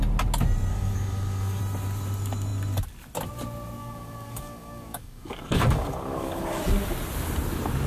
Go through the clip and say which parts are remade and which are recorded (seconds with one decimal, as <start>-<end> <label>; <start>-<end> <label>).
0.0-0.7 recorded; 0.7-1.6 remade; 1.6-3.8 recorded; 3.8-6.6 remade; 6.6-7.9 recorded